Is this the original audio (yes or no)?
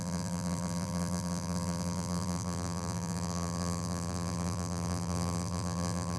no